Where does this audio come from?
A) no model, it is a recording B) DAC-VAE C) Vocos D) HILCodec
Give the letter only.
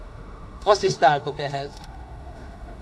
B